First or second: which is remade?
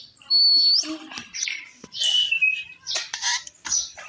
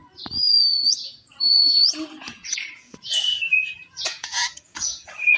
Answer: second